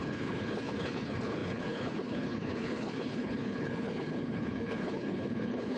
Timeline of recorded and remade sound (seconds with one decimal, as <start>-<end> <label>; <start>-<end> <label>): 0.0-5.8 remade